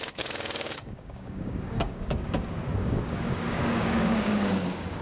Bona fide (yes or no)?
no